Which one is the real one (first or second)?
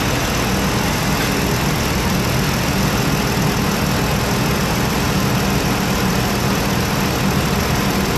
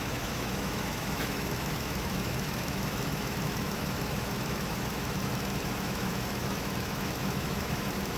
first